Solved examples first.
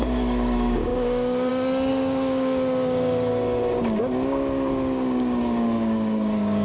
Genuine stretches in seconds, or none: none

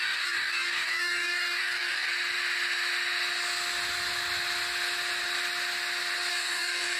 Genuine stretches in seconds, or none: 2.1-6.3

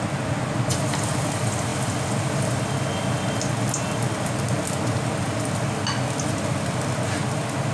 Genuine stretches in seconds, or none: 0.0-7.7